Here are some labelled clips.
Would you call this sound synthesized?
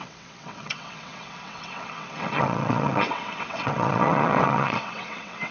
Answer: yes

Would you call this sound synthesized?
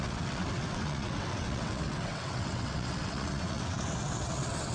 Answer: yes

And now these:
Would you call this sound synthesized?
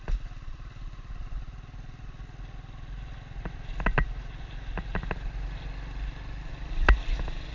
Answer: no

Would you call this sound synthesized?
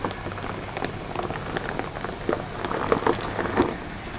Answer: no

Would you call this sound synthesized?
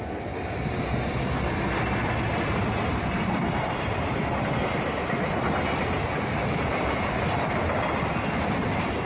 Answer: no